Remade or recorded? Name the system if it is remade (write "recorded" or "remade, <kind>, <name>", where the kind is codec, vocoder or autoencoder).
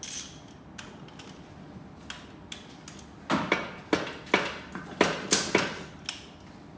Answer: recorded